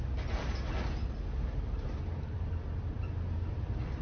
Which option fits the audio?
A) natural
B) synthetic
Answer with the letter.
A